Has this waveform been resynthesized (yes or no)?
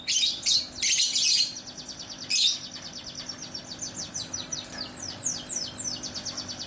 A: no